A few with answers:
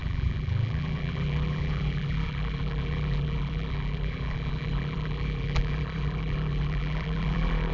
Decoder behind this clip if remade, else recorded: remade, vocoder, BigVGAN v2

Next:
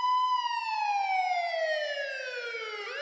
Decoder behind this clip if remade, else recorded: recorded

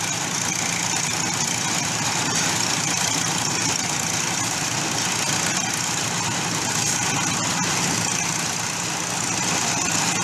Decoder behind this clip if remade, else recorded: recorded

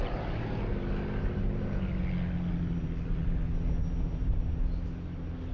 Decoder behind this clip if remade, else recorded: recorded